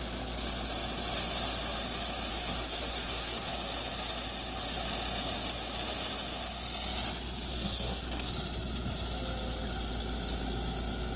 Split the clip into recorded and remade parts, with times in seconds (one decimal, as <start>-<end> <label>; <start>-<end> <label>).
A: 0.0-2.3 recorded; 2.3-3.5 remade; 3.5-7.5 recorded; 7.5-8.3 remade; 8.3-11.2 recorded